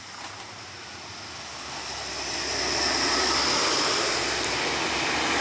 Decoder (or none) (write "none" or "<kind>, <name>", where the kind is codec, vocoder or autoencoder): none